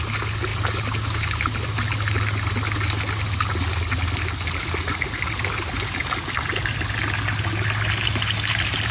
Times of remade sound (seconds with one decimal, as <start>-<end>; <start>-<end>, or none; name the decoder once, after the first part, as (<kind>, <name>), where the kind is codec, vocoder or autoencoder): none